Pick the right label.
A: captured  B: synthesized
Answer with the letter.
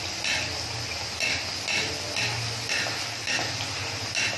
A